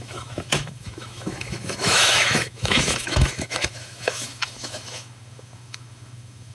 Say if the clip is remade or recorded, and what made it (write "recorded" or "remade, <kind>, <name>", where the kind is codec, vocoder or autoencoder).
remade, autoencoder, DAC-VAE